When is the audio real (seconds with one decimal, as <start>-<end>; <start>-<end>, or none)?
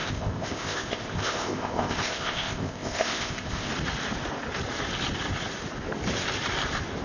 3.7-7.0